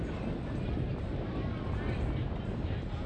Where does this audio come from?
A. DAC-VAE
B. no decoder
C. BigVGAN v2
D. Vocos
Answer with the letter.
B